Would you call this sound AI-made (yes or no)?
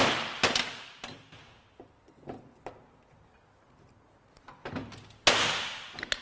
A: no